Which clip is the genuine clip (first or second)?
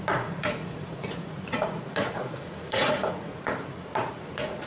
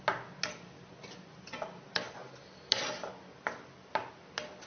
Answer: second